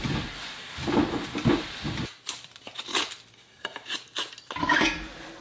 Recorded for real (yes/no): yes